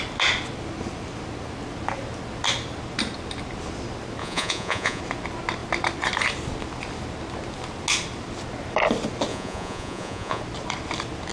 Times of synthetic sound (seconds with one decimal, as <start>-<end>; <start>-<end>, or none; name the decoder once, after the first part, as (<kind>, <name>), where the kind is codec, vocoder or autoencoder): 4.2-5.0 (vocoder, Vocos); 9.3-10.4